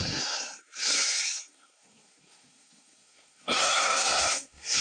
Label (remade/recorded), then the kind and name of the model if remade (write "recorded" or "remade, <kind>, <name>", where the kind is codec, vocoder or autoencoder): remade, codec, SNAC